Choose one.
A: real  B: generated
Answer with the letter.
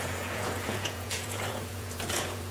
B